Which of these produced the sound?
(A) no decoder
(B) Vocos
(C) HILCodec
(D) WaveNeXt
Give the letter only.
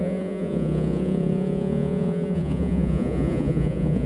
B